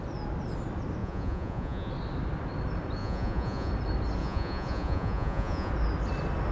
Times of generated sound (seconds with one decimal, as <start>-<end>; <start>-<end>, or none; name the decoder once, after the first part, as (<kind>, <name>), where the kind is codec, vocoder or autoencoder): 1.0-1.9 (vocoder, Vocos); 3.0-3.7; 4.2-5.7